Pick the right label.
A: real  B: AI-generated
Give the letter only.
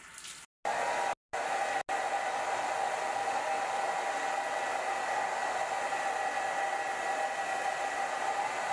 A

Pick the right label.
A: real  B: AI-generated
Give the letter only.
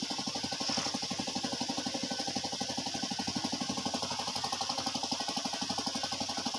A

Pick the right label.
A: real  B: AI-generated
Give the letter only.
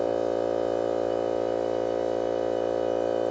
A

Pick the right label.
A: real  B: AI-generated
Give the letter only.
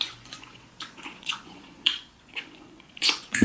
B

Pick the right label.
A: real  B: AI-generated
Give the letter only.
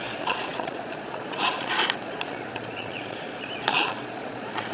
B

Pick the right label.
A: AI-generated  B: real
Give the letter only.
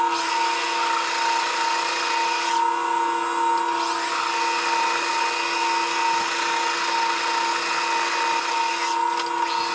B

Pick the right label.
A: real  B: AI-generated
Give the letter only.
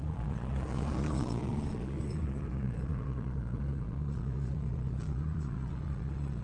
B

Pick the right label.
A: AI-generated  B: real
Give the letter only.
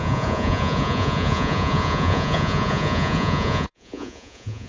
A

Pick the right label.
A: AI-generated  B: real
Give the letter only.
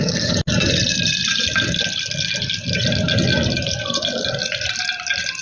B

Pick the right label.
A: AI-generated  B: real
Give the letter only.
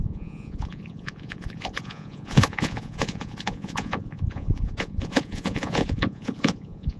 A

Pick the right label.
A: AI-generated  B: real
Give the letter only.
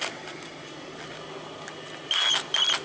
B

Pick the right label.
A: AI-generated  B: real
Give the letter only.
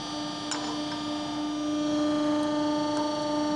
B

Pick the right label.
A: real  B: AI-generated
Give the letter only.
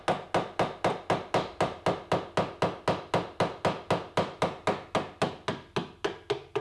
A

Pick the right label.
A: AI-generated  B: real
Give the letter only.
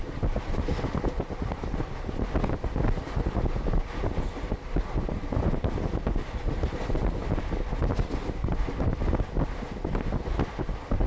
B